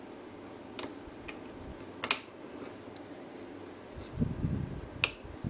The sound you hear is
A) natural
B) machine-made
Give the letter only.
A